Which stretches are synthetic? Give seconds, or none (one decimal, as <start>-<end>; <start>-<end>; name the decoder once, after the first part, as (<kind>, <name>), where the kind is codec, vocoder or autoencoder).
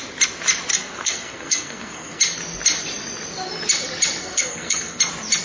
0.7-2.2 (codec, SNAC); 4.2-5.0